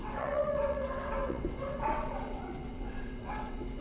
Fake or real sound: fake